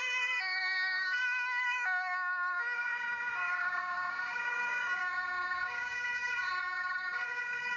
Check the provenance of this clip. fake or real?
fake